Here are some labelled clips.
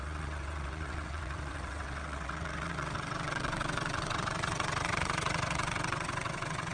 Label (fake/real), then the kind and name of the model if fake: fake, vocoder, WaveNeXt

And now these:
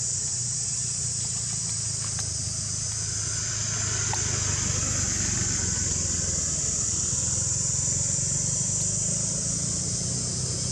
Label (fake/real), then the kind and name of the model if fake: real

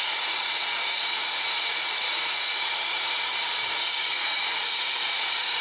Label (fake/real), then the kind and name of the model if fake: fake, vocoder, Vocos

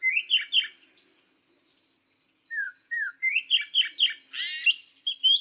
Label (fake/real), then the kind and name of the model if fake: real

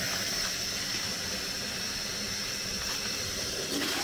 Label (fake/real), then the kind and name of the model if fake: real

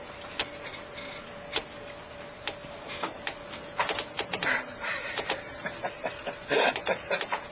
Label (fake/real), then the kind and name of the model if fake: real